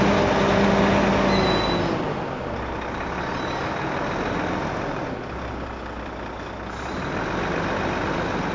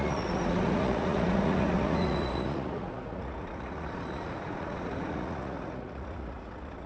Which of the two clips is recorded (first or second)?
first